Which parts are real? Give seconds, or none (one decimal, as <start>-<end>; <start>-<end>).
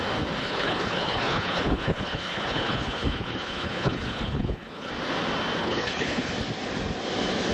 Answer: 0.0-0.4; 4.9-5.6; 6.3-7.5